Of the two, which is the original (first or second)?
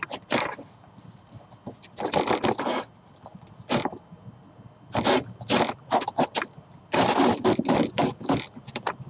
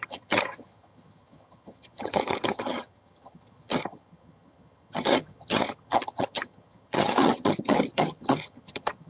first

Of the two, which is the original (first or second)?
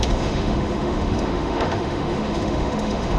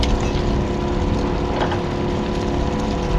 second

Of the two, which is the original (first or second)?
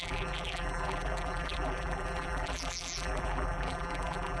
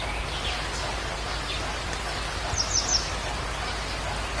second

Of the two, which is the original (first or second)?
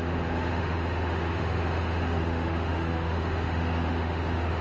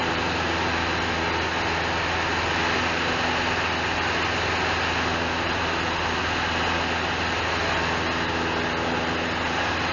second